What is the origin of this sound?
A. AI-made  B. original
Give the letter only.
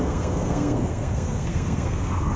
A